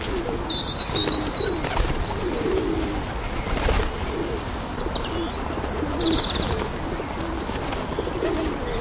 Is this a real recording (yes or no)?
yes